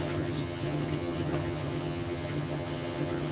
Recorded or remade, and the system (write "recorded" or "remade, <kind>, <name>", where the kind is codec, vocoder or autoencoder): remade, vocoder, HiFi-GAN